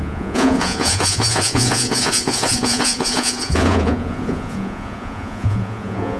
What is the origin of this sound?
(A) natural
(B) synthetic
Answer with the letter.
B